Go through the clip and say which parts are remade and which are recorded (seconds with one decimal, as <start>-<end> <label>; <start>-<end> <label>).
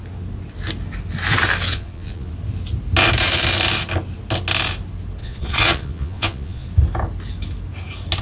0.0-1.7 recorded; 1.7-2.3 remade; 2.3-5.2 recorded; 5.2-6.7 remade; 6.7-8.2 recorded